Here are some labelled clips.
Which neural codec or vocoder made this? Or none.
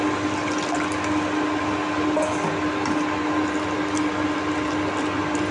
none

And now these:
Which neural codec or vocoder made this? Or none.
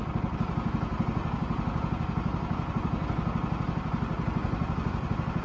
none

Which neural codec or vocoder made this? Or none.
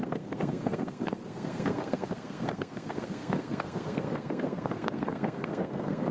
codec, SNAC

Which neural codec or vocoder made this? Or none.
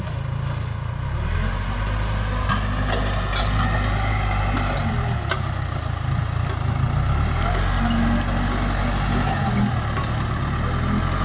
none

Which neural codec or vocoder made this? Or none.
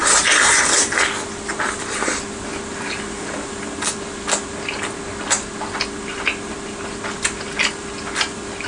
none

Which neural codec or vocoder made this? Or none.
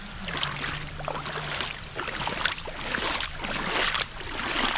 none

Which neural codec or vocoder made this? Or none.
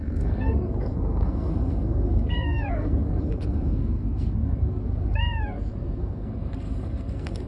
codec, SNAC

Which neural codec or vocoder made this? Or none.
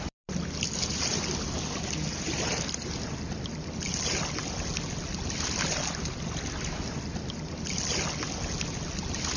none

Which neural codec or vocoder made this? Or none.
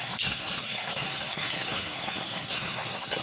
codec, SNAC